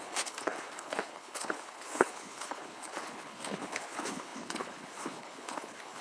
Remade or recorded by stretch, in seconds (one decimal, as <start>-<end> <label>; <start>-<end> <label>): 0.0-6.0 remade